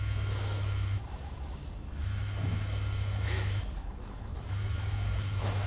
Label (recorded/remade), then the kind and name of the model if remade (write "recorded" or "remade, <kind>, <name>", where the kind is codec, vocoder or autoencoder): remade, autoencoder, DAC-VAE